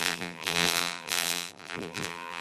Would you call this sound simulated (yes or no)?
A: yes